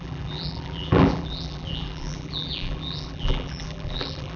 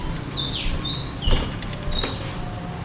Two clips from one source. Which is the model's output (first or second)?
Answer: first